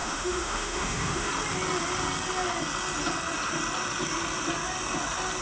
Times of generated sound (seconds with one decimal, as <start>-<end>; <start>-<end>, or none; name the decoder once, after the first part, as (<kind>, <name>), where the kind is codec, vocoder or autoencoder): 0.0-1.3 (autoencoder, DAC-VAE)